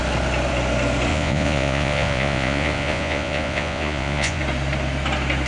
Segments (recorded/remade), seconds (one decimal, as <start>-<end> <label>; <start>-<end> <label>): 0.0-1.1 recorded; 1.1-4.4 remade; 4.4-5.5 recorded